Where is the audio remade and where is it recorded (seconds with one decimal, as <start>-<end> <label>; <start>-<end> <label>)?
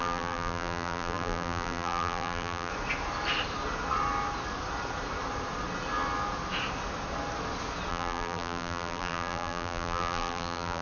0.0-2.7 remade; 2.7-7.9 recorded; 7.9-10.8 remade